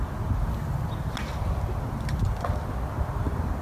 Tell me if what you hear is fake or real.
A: real